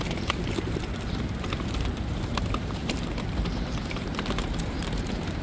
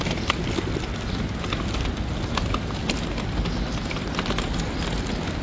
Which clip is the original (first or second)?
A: second